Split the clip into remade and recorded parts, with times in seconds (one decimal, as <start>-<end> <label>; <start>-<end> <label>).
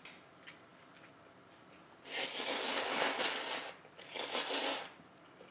0.0-5.5 recorded